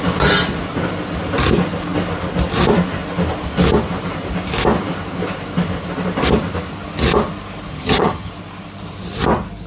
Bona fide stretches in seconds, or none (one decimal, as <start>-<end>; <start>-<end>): 0.0-7.7; 8.3-9.7